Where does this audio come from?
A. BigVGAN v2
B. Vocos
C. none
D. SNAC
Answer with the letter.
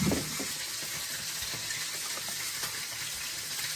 C